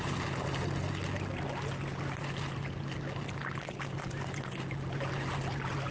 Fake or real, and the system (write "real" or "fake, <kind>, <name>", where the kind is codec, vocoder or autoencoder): real